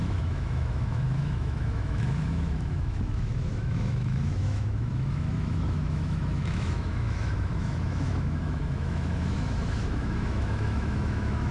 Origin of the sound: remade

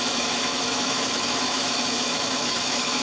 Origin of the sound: remade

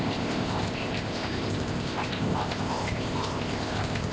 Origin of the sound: remade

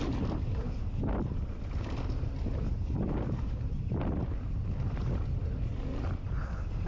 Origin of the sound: recorded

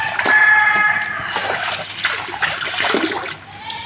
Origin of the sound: recorded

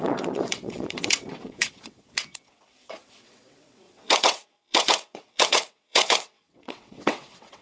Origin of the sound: remade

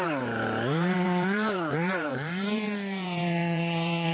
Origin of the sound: remade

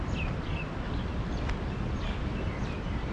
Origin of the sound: recorded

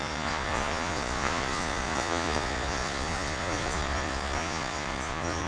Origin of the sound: remade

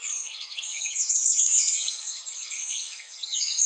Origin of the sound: remade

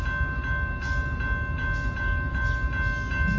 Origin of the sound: recorded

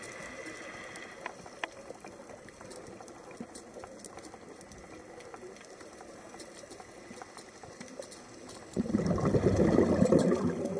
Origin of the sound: recorded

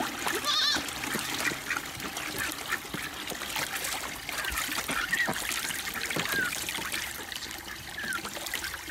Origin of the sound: recorded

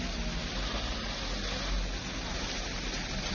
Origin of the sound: recorded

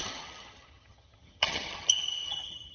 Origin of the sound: remade